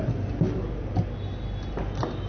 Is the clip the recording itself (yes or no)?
yes